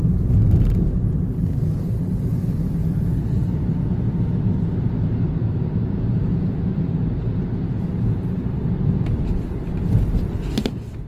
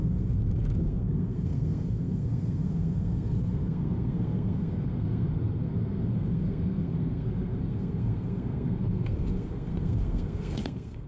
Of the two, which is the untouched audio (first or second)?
first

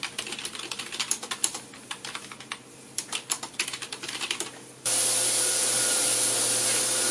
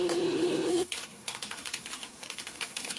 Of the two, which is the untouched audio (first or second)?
first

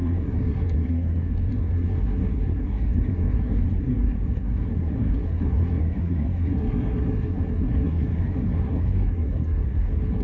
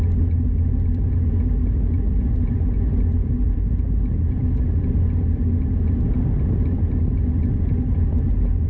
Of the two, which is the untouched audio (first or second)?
second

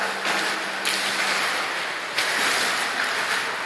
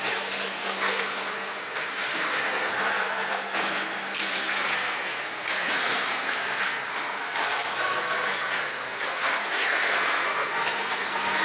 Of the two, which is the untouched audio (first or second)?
first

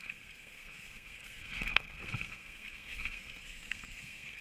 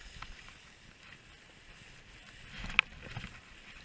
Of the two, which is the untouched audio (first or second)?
second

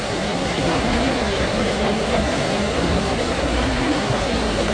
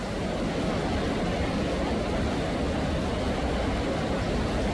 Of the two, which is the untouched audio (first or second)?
second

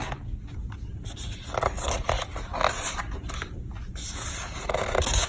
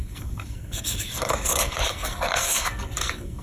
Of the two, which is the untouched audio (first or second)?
first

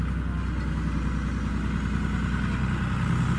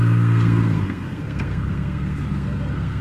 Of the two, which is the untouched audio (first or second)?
first